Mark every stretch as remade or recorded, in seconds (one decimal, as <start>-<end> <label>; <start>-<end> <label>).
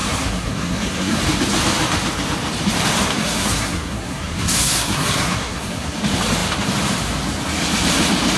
0.0-1.2 remade; 1.2-3.2 recorded; 3.2-6.0 remade; 6.0-8.4 recorded